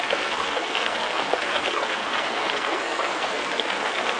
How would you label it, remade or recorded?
remade